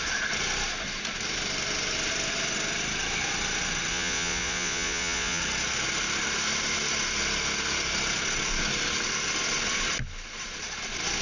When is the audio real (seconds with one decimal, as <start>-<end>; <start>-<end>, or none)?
0.0-3.9; 5.4-11.2